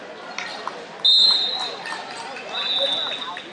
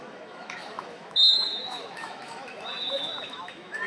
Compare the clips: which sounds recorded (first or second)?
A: first